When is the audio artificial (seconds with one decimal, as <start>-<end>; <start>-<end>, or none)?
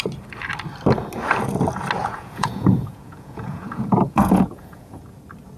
2.0-5.0